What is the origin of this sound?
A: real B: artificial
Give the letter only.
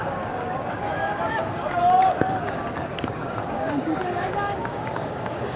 B